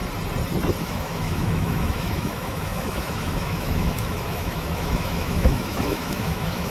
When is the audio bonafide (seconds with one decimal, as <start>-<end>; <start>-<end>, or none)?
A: 0.0-0.8